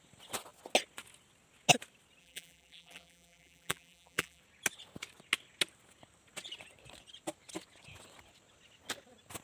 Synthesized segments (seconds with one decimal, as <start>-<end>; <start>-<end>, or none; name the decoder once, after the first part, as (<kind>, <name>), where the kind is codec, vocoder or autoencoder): 2.2-4.4 (vocoder, BigVGAN v2)